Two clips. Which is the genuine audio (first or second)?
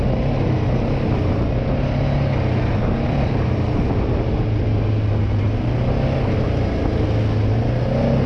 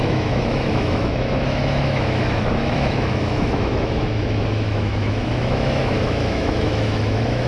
first